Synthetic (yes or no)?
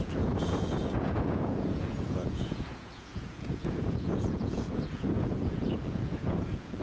yes